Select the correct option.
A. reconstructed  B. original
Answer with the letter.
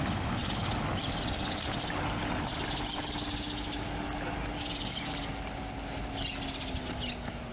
B